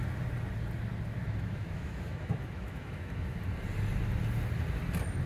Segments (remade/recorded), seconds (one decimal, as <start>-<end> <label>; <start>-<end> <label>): 0.0-1.2 recorded; 1.2-3.4 remade; 3.4-5.3 recorded